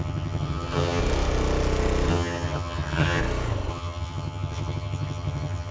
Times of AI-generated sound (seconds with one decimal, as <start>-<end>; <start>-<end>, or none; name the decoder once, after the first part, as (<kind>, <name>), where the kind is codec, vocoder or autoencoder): 0.0-1.0 (vocoder, HiFi-GAN); 2.1-3.2; 3.7-5.7